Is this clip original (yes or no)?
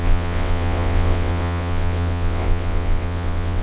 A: no